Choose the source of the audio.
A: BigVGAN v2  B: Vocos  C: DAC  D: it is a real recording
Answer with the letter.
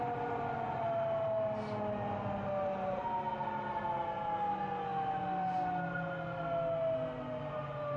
D